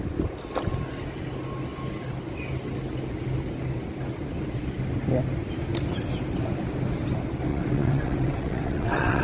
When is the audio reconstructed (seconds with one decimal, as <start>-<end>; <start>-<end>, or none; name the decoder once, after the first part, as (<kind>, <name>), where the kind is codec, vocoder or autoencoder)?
7.5-9.2 (vocoder, WaveNeXt)

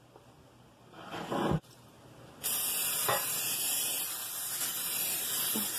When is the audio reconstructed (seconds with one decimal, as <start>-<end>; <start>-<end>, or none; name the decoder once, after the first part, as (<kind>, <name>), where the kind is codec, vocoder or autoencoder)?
none

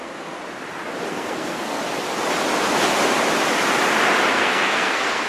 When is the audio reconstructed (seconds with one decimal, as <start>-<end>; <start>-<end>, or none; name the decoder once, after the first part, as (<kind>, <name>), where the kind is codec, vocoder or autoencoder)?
0.0-0.4 (codec, SNAC); 1.1-1.8; 4.3-5.3

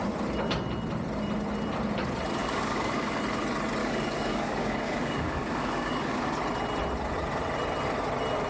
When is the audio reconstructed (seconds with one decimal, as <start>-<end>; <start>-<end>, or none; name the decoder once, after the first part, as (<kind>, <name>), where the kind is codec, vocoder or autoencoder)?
2.4-3.2 (codec, DAC); 3.8-6.3

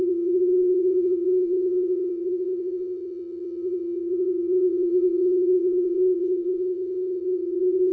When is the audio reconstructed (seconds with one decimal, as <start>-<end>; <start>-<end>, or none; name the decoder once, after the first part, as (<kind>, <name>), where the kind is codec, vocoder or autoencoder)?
0.0-7.9 (vocoder, BigVGAN v2)